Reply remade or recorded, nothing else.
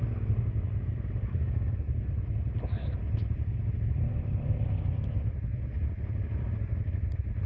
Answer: recorded